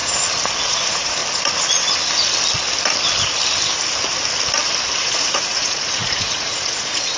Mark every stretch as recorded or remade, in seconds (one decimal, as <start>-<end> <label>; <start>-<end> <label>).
0.0-0.7 recorded; 0.7-1.2 remade; 1.2-5.0 recorded; 5.0-7.2 remade